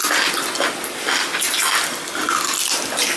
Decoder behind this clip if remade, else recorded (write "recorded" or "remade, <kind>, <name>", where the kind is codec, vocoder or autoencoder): recorded